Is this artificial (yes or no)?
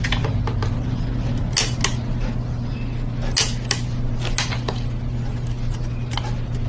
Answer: no